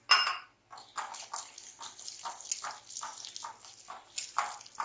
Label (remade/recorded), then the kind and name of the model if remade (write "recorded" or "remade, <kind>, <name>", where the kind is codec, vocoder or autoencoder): recorded